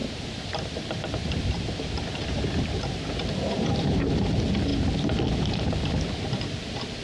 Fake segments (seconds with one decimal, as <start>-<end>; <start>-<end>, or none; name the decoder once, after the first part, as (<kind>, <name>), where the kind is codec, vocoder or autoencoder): 0.0-4.0 (vocoder, BigVGAN v2)